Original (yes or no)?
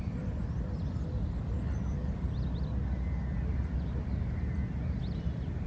yes